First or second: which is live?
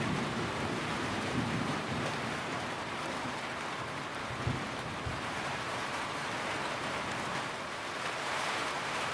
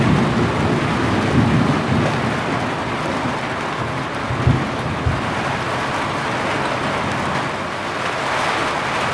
second